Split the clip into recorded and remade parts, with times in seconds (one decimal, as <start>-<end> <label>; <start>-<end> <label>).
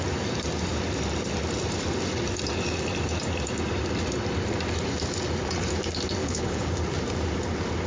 0.0-6.2 recorded; 6.2-6.7 remade; 6.7-7.9 recorded